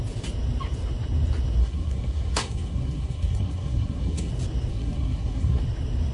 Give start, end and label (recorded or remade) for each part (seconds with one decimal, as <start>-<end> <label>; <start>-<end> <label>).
0.0-1.6 recorded; 1.6-4.3 remade; 4.3-4.7 recorded; 4.7-5.6 remade; 5.6-6.1 recorded